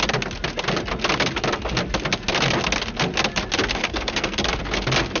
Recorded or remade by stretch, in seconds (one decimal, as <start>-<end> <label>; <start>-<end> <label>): 0.0-3.8 recorded; 3.8-4.6 remade; 4.6-5.2 recorded